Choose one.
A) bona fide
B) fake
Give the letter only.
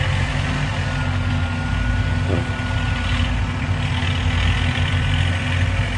A